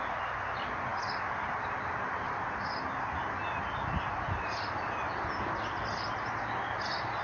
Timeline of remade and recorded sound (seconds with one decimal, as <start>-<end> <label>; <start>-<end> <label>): 0.0-7.2 recorded